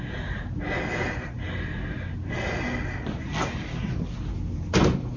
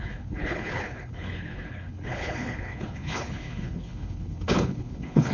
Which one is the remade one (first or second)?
second